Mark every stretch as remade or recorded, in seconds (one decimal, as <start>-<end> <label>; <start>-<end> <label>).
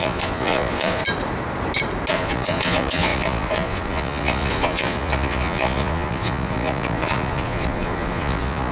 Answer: 0.0-1.0 remade; 1.0-2.1 recorded; 2.1-8.7 remade